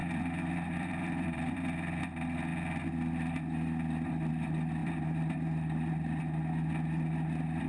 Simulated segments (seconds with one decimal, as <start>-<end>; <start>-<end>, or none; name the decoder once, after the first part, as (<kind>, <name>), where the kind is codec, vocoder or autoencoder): 0.0-2.0 (vocoder, BigVGAN v2); 4.8-6.2